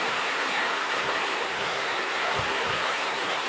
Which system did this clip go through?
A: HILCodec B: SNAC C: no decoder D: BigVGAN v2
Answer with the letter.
B